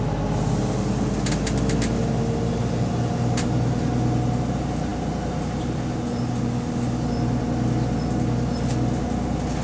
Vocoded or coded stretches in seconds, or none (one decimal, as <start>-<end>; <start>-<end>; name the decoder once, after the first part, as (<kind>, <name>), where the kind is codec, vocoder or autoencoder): none